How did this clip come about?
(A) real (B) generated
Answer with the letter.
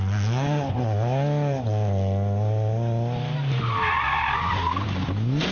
A